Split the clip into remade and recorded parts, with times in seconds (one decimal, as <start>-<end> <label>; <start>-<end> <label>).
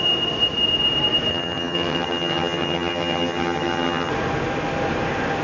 0.0-1.3 recorded; 1.3-4.1 remade; 4.1-5.4 recorded